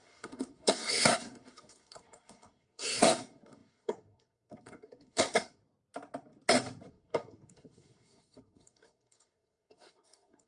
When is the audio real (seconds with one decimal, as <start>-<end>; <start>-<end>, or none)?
5.6-6.9